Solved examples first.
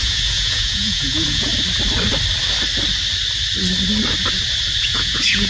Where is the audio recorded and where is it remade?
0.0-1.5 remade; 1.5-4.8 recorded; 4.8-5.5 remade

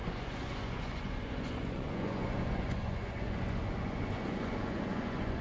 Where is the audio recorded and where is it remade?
0.0-5.4 remade

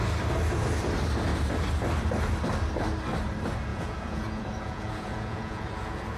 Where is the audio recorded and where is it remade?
0.0-3.7 recorded; 3.7-6.2 remade

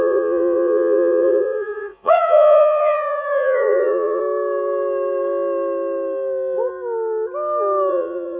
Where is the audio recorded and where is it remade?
0.0-4.2 remade; 4.2-7.9 recorded; 7.9-8.4 remade

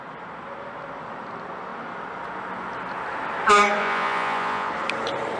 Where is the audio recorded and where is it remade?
0.0-3.8 recorded; 3.8-4.7 remade; 4.7-5.4 recorded

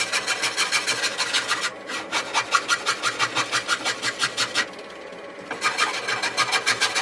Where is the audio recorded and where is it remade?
0.0-7.0 recorded

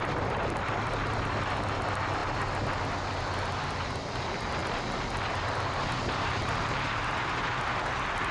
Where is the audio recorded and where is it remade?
0.0-8.3 recorded

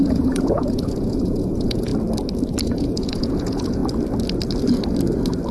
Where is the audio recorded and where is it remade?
0.0-1.9 remade; 1.9-2.6 recorded; 2.6-3.8 remade; 3.8-5.5 recorded